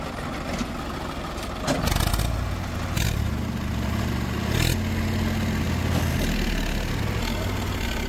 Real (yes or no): yes